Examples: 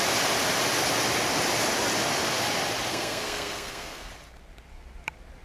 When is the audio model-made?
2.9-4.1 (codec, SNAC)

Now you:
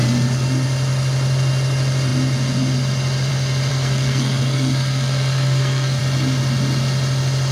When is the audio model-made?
3.7-6.0 (codec, SNAC)

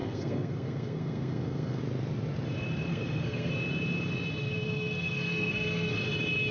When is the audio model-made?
0.0-1.8 (codec, SNAC); 2.9-3.5; 4.4-5.9

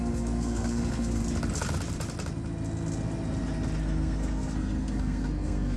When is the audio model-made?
0.0-1.2 (codec, SNAC); 3.8-5.8

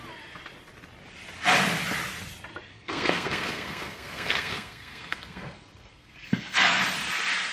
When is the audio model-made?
2.7-6.8 (codec, SNAC)

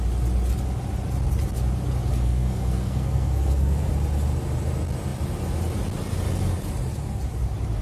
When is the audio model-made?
2.1-3.9 (codec, SNAC)